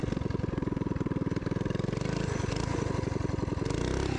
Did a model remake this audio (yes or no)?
no